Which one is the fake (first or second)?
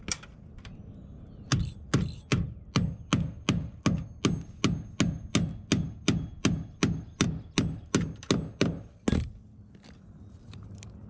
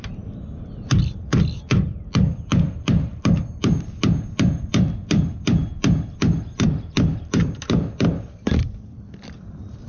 second